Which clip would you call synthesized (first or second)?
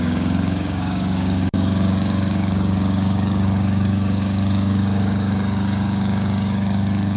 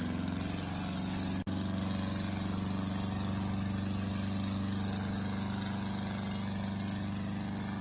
first